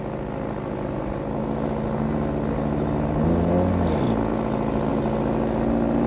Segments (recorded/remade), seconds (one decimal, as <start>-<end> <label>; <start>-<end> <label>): 0.0-6.1 recorded